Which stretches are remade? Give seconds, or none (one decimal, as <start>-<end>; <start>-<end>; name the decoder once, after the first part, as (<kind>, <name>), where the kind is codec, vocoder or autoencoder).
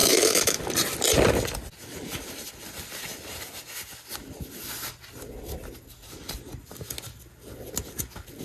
0.0-0.6 (autoencoder, DAC-VAE)